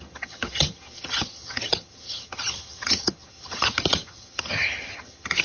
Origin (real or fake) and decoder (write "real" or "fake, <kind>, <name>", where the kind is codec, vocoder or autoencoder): fake, vocoder, HiFi-GAN